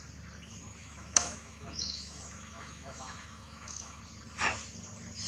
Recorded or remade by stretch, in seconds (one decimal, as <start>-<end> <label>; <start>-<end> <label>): 0.0-0.8 recorded; 0.8-4.0 remade; 4.0-5.3 recorded